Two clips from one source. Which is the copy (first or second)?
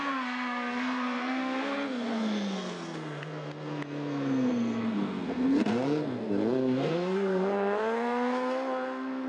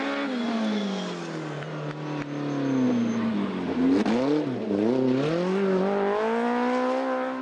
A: first